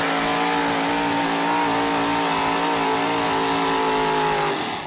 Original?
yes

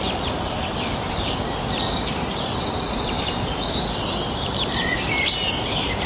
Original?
no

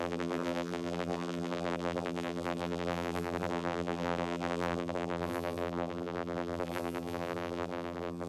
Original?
no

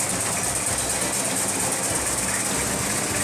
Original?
yes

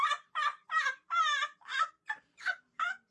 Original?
no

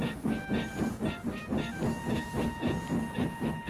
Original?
no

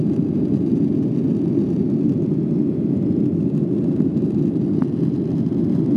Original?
yes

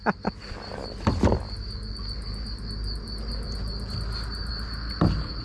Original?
yes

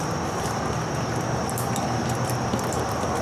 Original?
yes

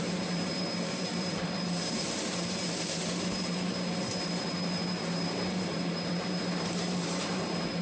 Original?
no